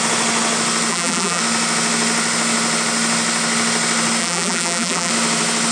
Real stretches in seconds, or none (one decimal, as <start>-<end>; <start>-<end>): 0.0-0.9; 1.4-4.2; 5.1-5.7

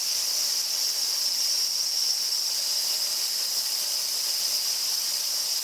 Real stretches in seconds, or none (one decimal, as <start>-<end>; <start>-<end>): 0.0-0.6; 4.0-4.9

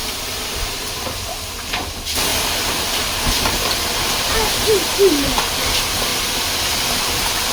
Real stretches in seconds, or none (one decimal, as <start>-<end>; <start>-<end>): 6.1-6.9

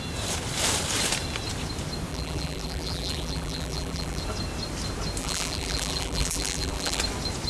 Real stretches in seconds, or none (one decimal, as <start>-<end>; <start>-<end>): 0.0-2.1; 4.2-5.2; 7.0-7.5

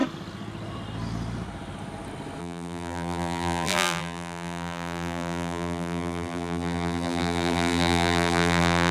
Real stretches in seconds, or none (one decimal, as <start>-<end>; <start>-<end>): 0.0-2.4